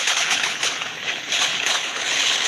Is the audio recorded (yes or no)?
no